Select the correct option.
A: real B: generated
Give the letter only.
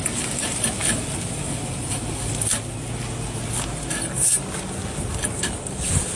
A